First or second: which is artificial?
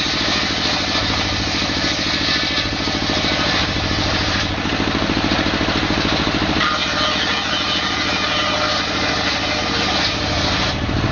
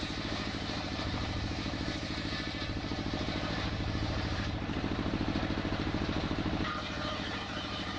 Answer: second